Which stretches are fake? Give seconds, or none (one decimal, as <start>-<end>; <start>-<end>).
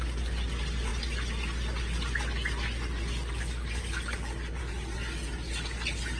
none